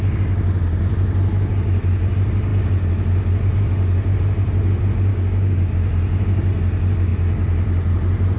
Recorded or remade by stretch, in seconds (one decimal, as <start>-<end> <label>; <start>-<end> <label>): 0.0-5.1 recorded; 5.1-5.7 remade; 5.7-8.4 recorded